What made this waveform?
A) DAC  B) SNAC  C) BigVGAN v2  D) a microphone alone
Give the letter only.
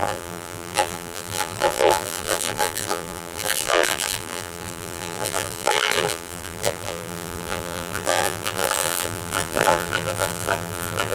C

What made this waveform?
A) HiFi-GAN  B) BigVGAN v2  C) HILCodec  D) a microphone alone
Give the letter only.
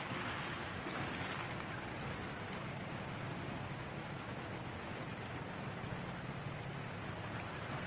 D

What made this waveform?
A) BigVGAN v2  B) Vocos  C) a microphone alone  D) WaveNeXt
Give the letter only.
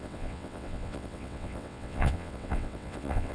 D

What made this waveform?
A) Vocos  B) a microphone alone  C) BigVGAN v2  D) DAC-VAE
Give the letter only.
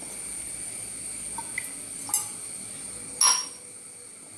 B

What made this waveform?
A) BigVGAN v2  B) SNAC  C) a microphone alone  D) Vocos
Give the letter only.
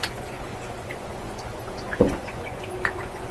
D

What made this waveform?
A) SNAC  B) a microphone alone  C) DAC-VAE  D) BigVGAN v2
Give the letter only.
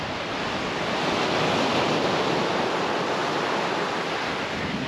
B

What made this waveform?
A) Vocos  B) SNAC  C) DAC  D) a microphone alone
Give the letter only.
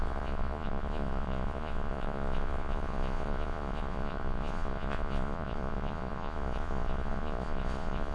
A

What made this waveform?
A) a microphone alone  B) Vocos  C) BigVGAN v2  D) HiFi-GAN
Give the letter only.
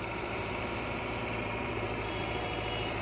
C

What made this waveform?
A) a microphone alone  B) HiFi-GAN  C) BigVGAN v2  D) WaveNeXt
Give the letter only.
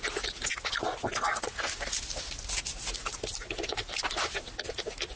A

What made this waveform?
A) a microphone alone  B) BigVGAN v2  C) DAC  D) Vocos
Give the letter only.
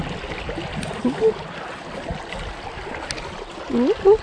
A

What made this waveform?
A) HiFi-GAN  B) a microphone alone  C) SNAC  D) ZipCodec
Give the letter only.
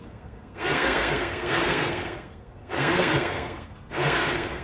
C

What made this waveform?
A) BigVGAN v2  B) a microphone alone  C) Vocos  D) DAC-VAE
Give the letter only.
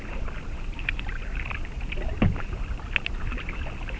B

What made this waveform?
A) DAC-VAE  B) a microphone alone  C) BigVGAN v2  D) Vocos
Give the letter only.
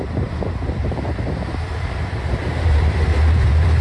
C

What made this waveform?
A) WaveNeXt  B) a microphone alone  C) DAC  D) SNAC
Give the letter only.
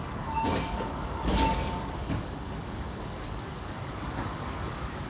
C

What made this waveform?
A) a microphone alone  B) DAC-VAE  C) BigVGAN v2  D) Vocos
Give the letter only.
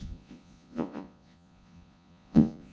D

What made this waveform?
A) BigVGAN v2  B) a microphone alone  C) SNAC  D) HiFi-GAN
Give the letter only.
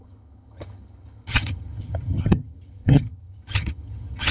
D